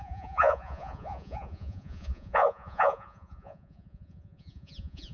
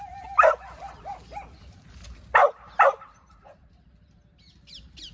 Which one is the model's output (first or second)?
first